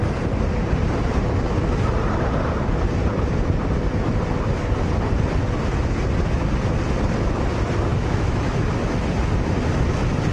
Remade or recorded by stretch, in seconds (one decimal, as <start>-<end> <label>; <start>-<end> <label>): 0.0-7.9 recorded; 7.9-8.7 remade; 8.7-10.3 recorded